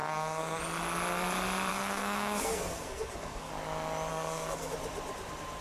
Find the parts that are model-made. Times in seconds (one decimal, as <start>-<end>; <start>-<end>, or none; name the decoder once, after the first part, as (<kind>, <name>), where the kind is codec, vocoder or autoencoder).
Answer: 0.0-0.6 (codec, SNAC); 1.7-3.5; 4.1-4.7